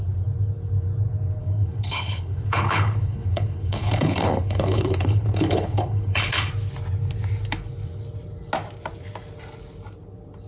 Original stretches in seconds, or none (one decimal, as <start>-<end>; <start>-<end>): 0.0-1.4; 6.5-10.5